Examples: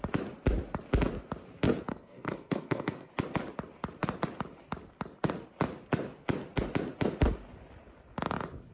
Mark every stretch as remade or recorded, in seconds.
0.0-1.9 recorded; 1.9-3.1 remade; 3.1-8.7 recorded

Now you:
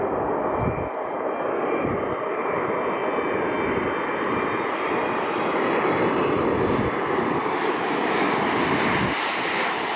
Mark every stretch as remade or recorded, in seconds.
0.0-3.0 remade; 3.0-4.7 recorded; 4.7-10.0 remade

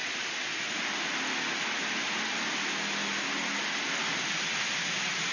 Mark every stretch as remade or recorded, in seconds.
0.0-5.3 recorded

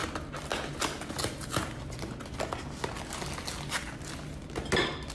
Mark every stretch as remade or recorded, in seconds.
0.0-5.1 recorded

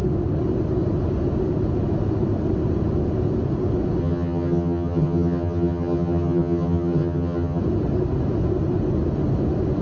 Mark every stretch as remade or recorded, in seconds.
0.0-4.0 recorded; 4.0-7.6 remade; 7.6-9.8 recorded

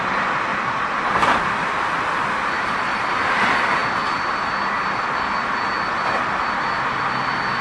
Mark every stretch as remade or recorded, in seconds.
0.0-0.5 recorded; 0.5-1.2 remade; 1.2-2.9 recorded; 2.9-3.4 remade; 3.4-7.6 recorded

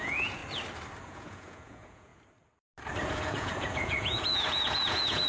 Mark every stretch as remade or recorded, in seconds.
0.0-0.4 remade; 0.4-1.0 recorded; 1.0-2.1 remade; 2.1-3.1 recorded; 3.1-5.3 remade

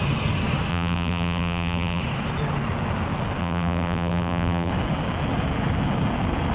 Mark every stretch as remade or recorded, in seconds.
0.0-0.7 recorded; 0.7-2.0 remade; 2.0-3.4 recorded; 3.4-4.7 remade; 4.7-6.5 recorded